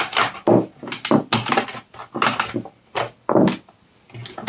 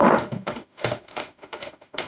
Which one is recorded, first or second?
first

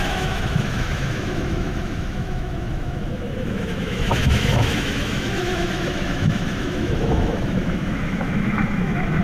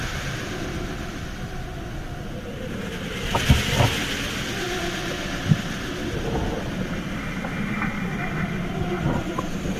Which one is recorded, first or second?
second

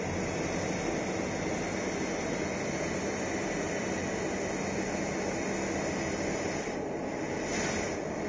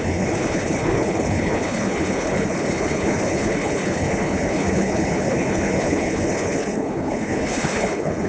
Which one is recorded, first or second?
first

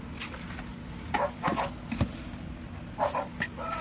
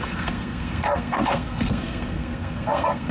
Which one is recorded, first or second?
first